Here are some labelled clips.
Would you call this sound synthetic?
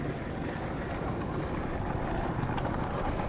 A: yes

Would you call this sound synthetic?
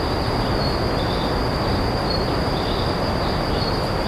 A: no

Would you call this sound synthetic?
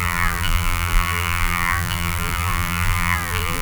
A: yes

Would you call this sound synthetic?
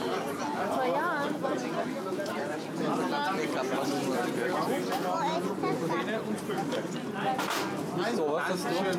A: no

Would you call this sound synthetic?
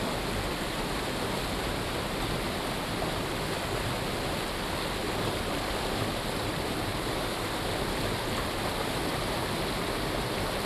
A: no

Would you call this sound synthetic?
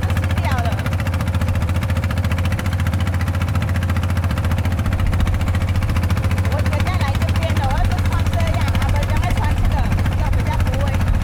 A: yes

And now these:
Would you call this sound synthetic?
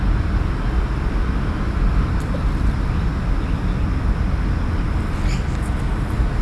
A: no